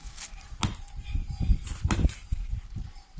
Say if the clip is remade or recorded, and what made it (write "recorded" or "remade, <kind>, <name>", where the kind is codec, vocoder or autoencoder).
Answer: recorded